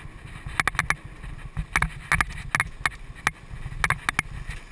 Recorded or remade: recorded